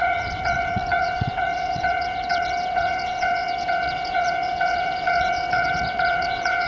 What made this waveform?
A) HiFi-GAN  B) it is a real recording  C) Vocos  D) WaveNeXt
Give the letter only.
D